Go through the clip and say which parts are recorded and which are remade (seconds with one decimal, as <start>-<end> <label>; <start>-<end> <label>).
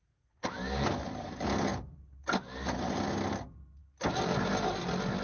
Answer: 0.0-5.2 recorded